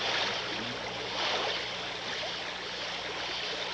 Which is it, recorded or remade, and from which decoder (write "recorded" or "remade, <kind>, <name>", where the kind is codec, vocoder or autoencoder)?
recorded